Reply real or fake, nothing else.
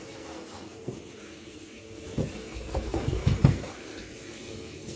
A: fake